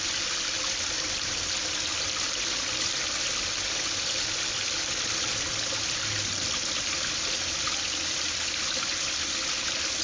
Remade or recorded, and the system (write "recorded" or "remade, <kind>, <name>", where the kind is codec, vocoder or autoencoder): recorded